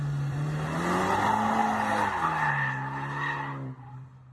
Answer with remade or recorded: recorded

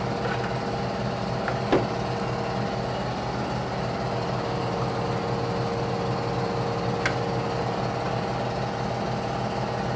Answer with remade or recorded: recorded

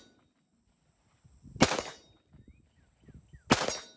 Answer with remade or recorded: recorded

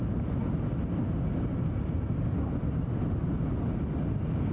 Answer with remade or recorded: recorded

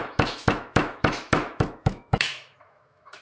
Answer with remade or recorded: remade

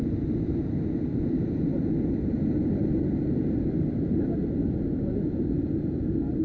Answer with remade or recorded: recorded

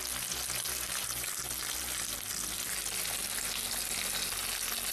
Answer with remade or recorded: recorded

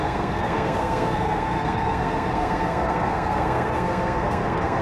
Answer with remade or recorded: remade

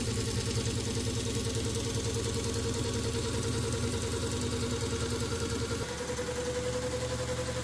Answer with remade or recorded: recorded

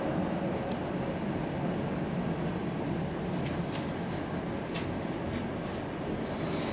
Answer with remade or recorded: recorded